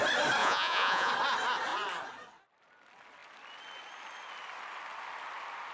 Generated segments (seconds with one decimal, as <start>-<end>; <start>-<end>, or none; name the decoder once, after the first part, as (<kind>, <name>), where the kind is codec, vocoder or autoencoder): 0.4-1.1 (vocoder, Vocos)